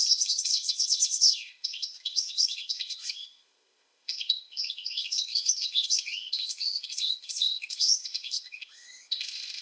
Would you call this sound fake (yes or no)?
yes